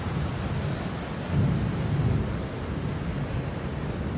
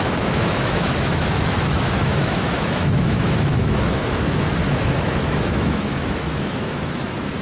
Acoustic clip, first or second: first